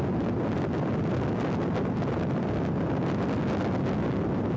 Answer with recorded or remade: recorded